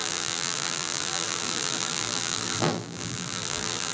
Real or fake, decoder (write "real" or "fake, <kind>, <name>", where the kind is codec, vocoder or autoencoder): fake, vocoder, BigVGAN v2